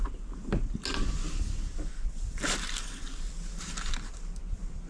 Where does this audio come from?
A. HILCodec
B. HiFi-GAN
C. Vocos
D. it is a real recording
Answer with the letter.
D